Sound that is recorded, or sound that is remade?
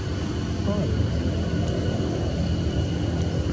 recorded